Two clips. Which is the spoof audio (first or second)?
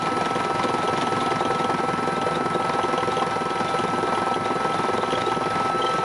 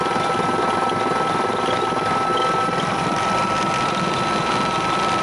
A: second